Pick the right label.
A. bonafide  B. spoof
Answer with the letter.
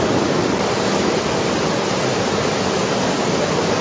A